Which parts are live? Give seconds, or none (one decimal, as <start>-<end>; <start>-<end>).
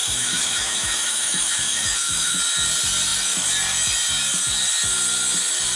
2.4-5.8